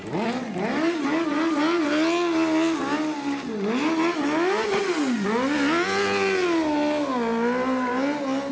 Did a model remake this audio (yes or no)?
no